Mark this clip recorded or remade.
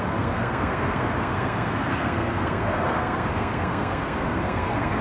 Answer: remade